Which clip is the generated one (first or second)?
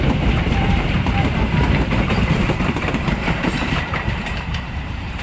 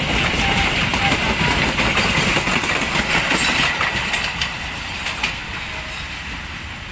first